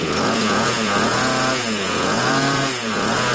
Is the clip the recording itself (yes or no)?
no